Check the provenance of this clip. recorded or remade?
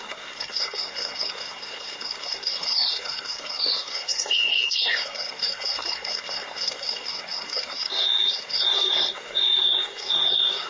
remade